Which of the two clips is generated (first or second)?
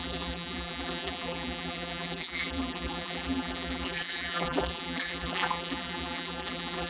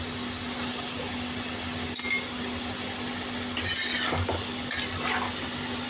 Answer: first